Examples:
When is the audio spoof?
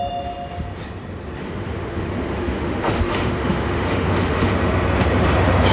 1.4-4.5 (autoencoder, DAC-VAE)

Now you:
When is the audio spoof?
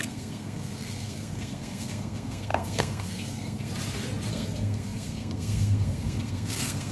0.0-3.7 (codec, SNAC); 4.3-6.9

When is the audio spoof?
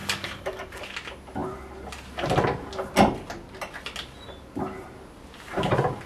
0.0-0.8 (codec, DAC)